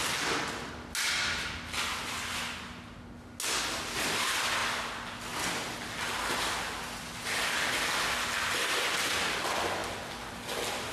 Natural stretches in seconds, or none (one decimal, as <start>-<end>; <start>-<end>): 0.0-10.9